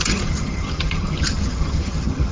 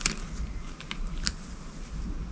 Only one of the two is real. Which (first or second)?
second